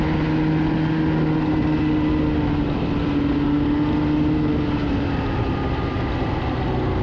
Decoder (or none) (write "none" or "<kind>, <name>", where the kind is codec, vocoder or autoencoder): none